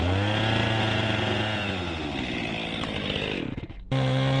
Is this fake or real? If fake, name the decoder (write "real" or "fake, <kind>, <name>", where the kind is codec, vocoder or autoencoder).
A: real